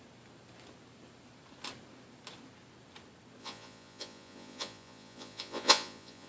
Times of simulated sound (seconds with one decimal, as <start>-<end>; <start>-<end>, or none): 3.4-6.3